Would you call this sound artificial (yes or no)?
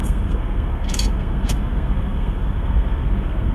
yes